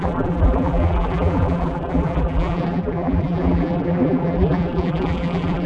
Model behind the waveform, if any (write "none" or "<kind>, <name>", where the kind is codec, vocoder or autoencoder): vocoder, BigVGAN v2